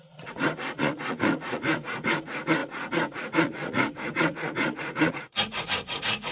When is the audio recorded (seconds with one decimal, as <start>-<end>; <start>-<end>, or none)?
none